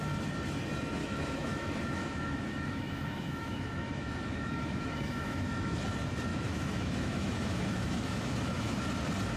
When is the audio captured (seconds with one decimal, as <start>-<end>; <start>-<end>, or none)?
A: 0.0-1.0; 5.8-6.3; 8.8-9.4